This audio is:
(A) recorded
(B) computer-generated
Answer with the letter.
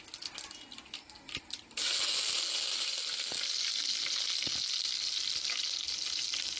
A